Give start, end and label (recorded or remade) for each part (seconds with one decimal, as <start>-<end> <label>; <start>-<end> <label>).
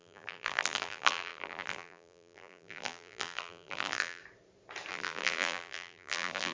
0.0-4.2 remade; 4.2-4.9 recorded; 4.9-6.5 remade